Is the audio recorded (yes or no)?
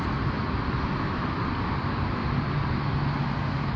yes